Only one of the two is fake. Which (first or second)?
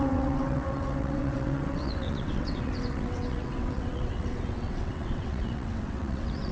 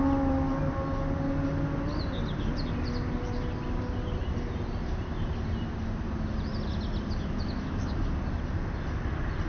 first